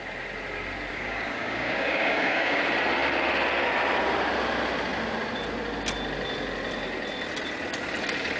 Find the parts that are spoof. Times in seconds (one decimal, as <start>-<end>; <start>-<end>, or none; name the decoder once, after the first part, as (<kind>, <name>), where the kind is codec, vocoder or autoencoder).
0.9-2.6 (codec, DAC)